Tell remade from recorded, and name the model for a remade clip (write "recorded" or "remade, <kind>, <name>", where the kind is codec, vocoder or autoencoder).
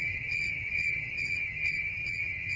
remade, vocoder, HiFi-GAN